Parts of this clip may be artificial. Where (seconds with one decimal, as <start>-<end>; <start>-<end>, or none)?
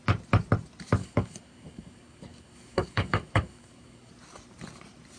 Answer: 1.0-4.1